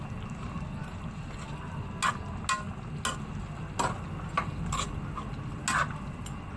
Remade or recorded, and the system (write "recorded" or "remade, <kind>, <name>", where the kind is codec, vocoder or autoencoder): recorded